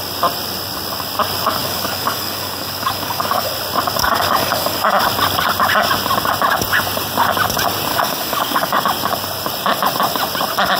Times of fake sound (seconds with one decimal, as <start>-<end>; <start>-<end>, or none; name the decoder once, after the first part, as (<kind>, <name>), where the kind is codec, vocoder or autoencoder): 1.6-3.5 (codec, DAC); 4.0-4.9; 7.9-8.8